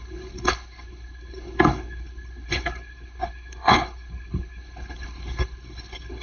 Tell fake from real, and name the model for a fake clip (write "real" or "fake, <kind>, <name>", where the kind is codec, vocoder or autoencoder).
fake, codec, HILCodec